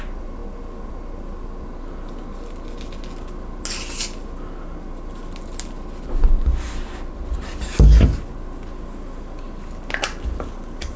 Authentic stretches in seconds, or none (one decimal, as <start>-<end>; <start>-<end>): 0.0-11.0

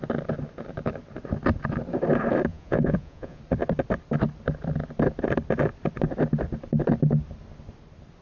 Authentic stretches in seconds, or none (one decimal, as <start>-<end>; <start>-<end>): 0.0-2.5; 3.4-8.2

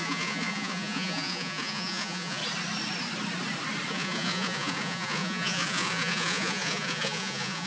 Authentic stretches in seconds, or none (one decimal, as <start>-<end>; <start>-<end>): 2.4-3.9

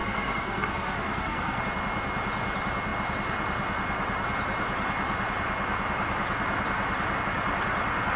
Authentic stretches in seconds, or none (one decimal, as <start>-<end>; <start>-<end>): 1.6-8.2

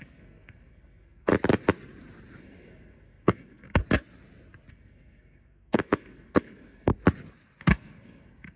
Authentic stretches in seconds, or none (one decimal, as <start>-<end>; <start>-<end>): 1.3-2.4; 3.8-4.7; 6.9-7.6

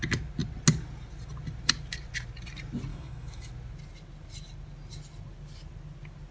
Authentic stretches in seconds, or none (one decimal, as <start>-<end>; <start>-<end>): 0.0-2.9; 3.5-6.3

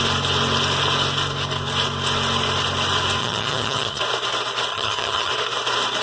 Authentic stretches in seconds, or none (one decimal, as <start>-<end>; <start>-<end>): 0.0-3.2; 4.0-4.7; 5.3-6.0

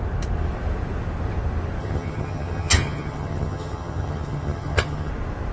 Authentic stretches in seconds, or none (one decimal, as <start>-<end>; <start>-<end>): 0.0-1.8; 5.1-5.5